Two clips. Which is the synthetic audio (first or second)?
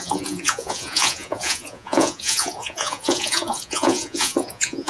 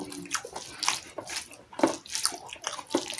first